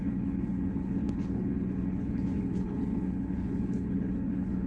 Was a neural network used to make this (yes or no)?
yes